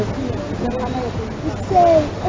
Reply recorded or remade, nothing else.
recorded